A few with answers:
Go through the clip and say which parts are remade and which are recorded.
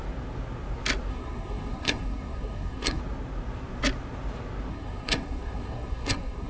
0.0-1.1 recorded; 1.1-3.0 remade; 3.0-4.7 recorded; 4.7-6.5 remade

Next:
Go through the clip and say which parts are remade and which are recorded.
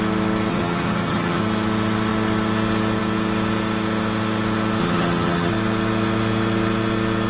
0.0-0.5 recorded; 0.5-1.4 remade; 1.4-4.8 recorded; 4.8-5.5 remade; 5.5-7.3 recorded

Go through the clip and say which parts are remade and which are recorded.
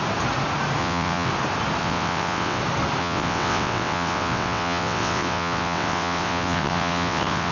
0.0-0.8 recorded; 0.8-1.3 remade; 1.3-1.8 recorded; 1.8-2.6 remade; 2.6-3.0 recorded; 3.0-7.5 remade